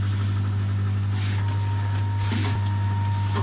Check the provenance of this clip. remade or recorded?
recorded